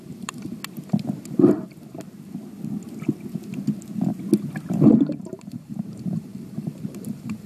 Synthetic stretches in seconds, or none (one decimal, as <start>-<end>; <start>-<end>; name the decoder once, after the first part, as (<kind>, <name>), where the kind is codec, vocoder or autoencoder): 0.0-0.5 (vocoder, BigVGAN v2); 4.9-7.5